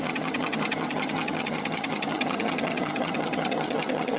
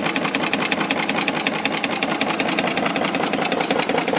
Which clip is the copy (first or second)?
first